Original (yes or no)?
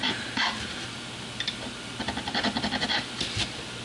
yes